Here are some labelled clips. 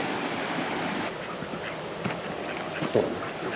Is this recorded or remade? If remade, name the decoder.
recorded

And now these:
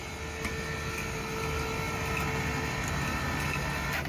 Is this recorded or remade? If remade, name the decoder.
recorded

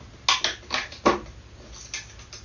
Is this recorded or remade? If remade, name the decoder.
recorded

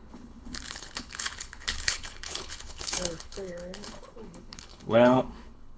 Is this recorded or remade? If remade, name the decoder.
remade, codec, HILCodec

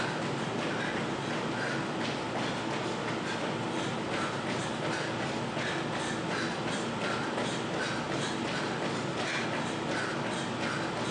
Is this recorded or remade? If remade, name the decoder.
recorded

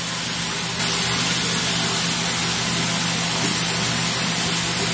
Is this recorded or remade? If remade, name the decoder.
recorded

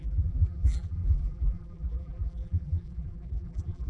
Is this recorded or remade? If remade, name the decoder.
remade, vocoder, BigVGAN v2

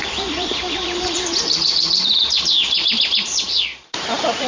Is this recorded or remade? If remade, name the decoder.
remade, vocoder, BigVGAN v2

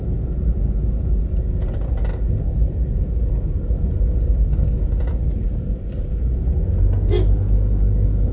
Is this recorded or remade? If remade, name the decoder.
recorded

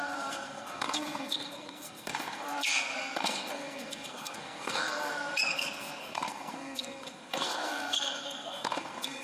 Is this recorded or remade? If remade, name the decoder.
remade, codec, SNAC